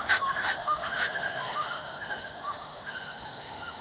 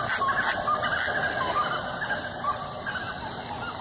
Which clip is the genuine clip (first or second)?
second